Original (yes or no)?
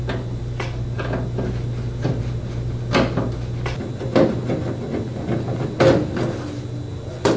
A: yes